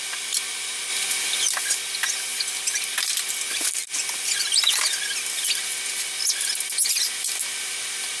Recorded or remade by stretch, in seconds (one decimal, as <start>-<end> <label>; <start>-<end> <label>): 0.0-8.2 recorded